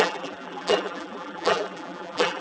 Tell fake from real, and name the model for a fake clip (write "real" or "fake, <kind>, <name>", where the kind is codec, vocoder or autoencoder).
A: fake, vocoder, BigVGAN v2